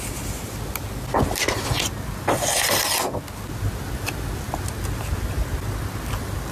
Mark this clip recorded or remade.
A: recorded